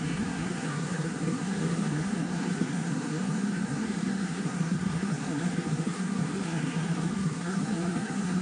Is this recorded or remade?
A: remade